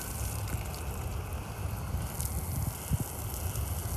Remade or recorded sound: recorded